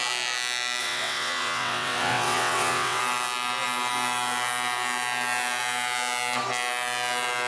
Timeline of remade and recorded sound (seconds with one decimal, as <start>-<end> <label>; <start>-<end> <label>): 0.0-0.8 recorded; 0.8-3.0 remade; 3.0-7.5 recorded

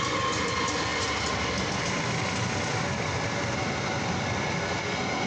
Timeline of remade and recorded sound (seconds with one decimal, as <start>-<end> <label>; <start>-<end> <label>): 0.0-5.3 recorded

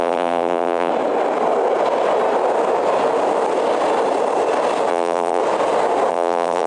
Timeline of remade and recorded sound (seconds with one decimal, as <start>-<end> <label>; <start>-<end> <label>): 0.0-0.9 remade; 0.9-4.9 recorded; 4.9-5.4 remade; 5.4-6.1 recorded; 6.1-6.7 remade

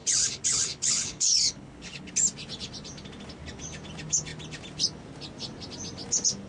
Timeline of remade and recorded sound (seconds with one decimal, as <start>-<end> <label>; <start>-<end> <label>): 0.0-2.1 remade; 2.1-6.5 recorded

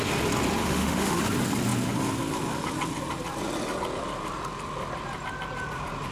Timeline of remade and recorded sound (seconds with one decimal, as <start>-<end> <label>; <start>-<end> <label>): 0.0-0.6 recorded; 0.6-1.2 remade; 1.2-6.1 recorded

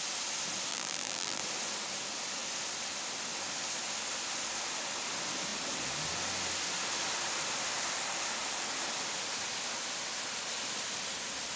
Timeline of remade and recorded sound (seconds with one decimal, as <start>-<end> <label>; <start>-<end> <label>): 0.0-0.7 recorded; 0.7-1.4 remade; 1.4-11.6 recorded

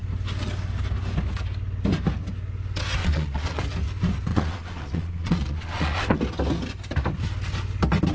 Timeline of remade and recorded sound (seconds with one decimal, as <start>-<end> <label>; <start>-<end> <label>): 0.0-3.0 recorded; 3.0-3.6 remade; 3.6-4.3 recorded; 4.3-6.2 remade; 6.2-8.1 recorded

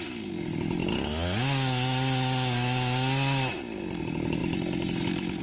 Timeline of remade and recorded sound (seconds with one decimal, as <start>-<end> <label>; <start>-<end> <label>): 0.0-5.4 recorded